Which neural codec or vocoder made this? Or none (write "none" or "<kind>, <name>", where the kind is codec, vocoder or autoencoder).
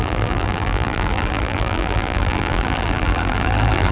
vocoder, BigVGAN v2